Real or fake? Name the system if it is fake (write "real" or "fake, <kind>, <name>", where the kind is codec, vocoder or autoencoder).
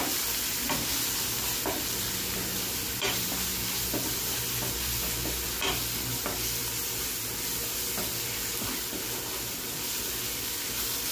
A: real